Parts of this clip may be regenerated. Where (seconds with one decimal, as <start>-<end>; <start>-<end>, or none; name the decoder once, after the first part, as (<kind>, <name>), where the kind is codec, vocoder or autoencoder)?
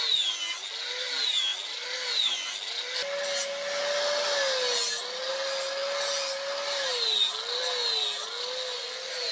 none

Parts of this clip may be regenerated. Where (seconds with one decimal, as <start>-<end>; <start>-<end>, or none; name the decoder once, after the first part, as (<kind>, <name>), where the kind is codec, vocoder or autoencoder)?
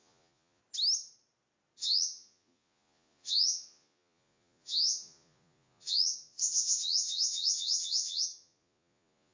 0.0-0.6 (vocoder, Vocos); 1.8-9.3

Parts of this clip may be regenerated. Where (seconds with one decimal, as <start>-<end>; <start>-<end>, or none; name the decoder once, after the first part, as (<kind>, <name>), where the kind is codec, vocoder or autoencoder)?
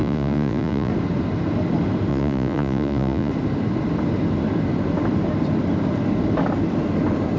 0.0-0.9 (vocoder, Vocos); 2.1-3.3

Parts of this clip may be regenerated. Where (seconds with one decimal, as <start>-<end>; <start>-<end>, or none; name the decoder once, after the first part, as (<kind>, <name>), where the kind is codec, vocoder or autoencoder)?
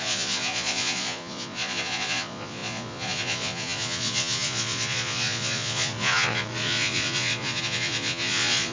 0.0-8.7 (vocoder, Vocos)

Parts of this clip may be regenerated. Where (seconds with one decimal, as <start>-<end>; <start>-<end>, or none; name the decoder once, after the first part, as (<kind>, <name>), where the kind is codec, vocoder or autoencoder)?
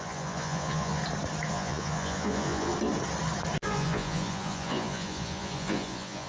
0.0-1.0 (vocoder, Vocos); 1.5-2.7; 3.6-6.3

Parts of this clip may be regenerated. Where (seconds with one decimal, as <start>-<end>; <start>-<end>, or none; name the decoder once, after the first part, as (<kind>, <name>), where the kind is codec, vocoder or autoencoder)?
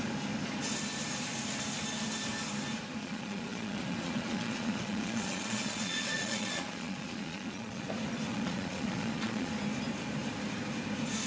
3.0-7.9 (vocoder, Vocos); 8.3-9.5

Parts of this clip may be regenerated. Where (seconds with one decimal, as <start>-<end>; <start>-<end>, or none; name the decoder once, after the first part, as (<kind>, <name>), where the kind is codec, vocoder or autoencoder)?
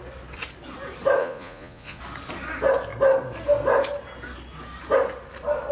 1.2-2.0 (vocoder, Vocos)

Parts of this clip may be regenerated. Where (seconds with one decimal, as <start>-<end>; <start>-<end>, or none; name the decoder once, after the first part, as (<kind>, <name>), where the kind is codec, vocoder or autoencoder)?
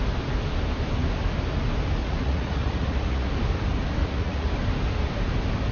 2.0-3.3 (vocoder, Vocos); 4.0-4.5